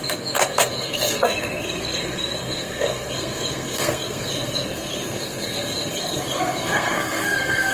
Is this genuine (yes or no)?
no